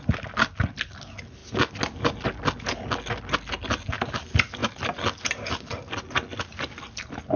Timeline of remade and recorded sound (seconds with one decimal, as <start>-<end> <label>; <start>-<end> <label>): 0.0-7.4 recorded

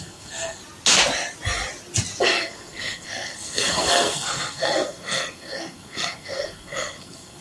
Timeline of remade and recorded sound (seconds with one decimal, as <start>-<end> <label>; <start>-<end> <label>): 0.0-0.6 remade; 0.6-2.2 recorded; 2.2-7.4 remade

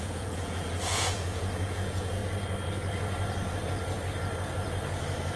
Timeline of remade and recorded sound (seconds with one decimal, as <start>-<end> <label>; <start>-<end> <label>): 0.0-2.2 remade; 2.2-5.4 recorded

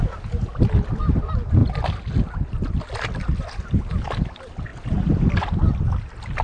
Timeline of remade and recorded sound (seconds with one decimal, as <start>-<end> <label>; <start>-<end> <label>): 0.0-6.4 recorded

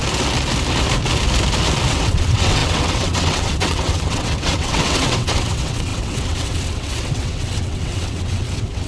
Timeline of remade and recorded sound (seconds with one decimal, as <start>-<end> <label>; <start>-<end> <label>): 0.0-1.9 recorded; 1.9-8.9 remade

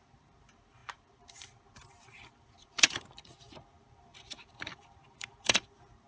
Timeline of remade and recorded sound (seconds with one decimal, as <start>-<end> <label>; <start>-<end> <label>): 0.0-6.1 remade

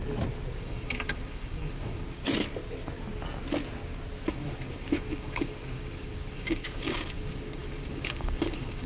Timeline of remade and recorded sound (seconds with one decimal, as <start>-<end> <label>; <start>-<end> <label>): 0.0-0.6 recorded; 0.6-2.2 remade; 2.2-4.3 recorded; 4.3-8.9 remade